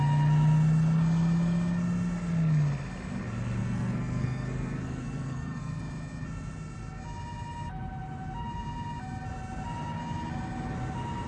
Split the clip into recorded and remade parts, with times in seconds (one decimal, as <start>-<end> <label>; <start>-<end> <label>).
0.0-3.6 recorded; 3.6-5.8 remade; 5.8-11.3 recorded